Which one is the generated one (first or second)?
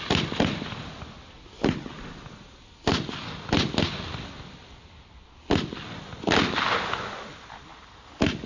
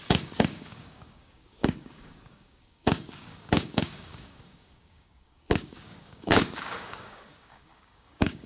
second